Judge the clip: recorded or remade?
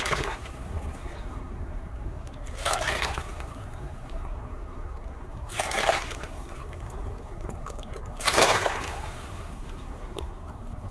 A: remade